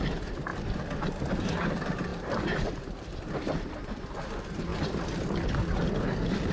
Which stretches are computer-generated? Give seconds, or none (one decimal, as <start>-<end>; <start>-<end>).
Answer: 0.0-0.5; 1.0-4.7